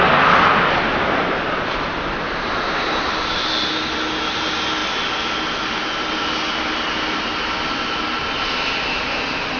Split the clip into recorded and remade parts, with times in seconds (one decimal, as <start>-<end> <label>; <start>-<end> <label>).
0.0-9.6 recorded